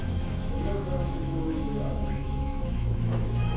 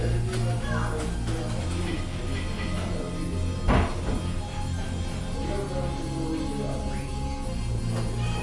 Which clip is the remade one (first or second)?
first